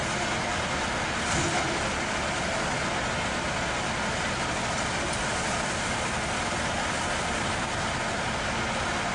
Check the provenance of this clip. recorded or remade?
recorded